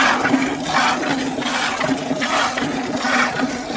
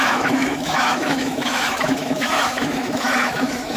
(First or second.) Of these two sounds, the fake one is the second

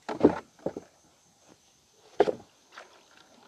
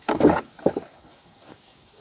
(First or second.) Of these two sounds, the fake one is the second